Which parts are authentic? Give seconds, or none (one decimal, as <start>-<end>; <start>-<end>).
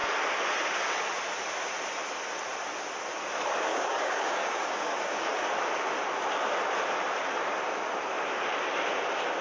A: 0.0-3.7; 5.4-9.4